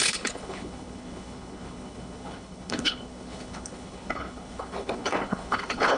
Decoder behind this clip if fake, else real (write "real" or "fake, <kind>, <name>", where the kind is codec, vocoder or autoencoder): fake, codec, HILCodec